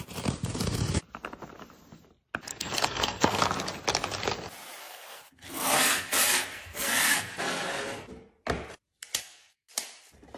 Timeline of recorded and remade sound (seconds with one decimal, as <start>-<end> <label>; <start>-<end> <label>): 0.0-2.5 recorded; 2.5-3.4 remade; 3.4-4.8 recorded; 4.8-8.1 remade; 8.1-9.2 recorded; 9.2-9.7 remade; 9.7-10.4 recorded